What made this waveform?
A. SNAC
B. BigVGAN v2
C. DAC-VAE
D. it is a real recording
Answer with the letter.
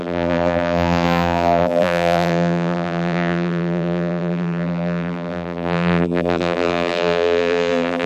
B